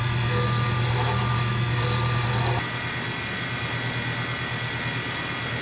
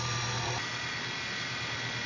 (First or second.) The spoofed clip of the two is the second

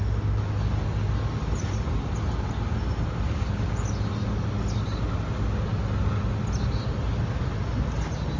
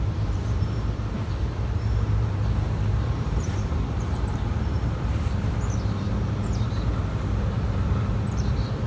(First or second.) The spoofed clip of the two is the second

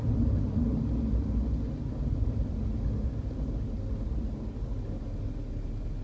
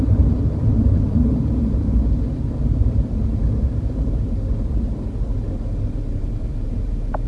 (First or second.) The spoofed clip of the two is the second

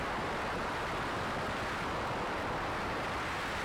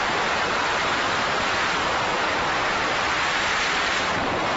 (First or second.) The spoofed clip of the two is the second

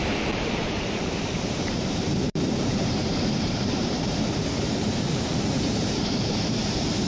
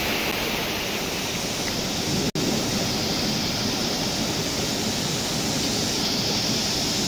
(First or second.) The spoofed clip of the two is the first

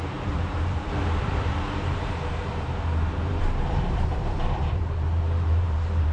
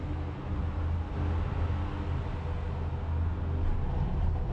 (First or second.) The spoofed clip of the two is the first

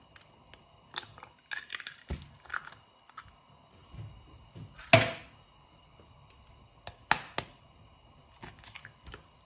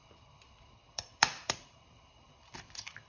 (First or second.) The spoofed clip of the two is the second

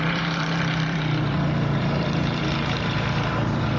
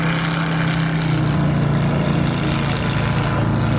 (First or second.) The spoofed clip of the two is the first